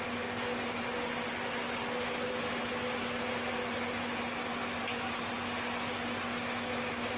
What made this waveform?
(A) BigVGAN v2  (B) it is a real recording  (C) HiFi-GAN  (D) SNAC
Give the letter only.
B